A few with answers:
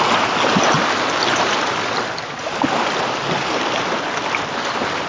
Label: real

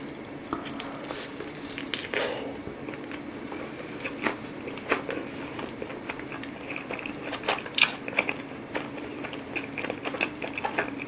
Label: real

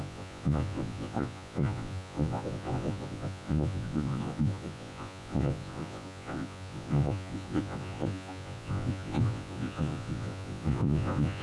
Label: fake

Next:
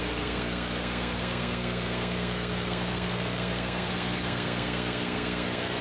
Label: fake